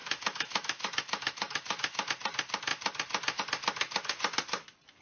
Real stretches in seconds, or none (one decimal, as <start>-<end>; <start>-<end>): 2.1-5.0